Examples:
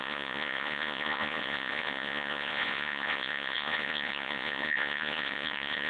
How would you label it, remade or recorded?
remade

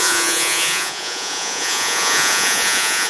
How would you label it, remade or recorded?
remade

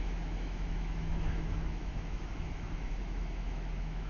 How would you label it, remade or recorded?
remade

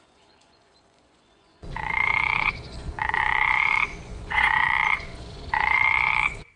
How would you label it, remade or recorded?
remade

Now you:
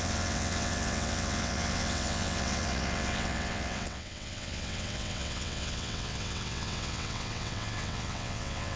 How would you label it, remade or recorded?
remade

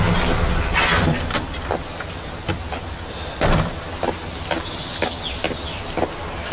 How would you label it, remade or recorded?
recorded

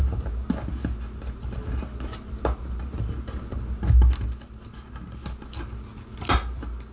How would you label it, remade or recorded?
recorded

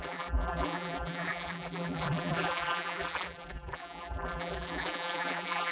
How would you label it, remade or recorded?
remade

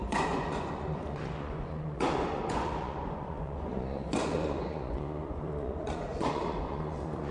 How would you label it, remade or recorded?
remade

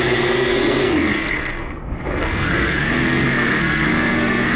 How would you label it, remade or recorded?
remade